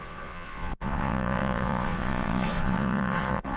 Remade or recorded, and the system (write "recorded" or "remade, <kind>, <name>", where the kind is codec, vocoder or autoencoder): remade, vocoder, Vocos